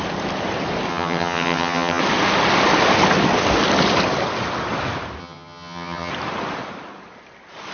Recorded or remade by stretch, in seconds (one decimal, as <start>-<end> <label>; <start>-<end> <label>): 0.0-0.9 recorded; 0.9-2.0 remade; 2.0-5.2 recorded; 5.2-6.1 remade; 6.1-7.7 recorded

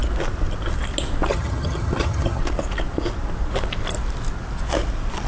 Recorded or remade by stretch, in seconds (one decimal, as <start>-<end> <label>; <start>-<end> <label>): 0.0-1.3 recorded; 1.3-2.4 remade; 2.4-5.3 recorded

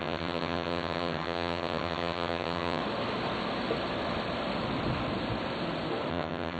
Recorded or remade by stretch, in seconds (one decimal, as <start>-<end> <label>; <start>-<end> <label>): 0.0-2.8 remade; 2.8-6.1 recorded; 6.1-6.6 remade

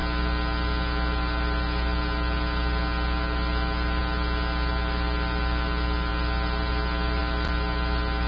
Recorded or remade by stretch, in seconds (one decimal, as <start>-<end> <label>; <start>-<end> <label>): 0.0-8.3 recorded

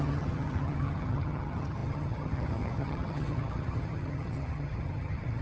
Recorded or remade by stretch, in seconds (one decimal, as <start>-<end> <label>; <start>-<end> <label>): 0.0-5.4 remade

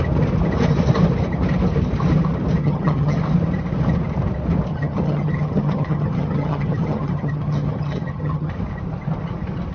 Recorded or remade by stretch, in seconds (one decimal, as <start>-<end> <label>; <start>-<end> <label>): 0.0-2.6 recorded; 2.6-3.2 remade; 3.2-4.7 recorded; 4.7-8.5 remade; 8.5-9.7 recorded

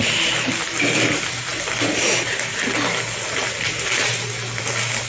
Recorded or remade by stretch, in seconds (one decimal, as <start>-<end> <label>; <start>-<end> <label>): 0.0-5.1 recorded